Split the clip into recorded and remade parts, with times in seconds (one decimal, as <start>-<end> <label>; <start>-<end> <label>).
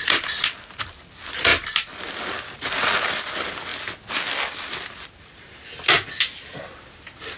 0.0-7.4 recorded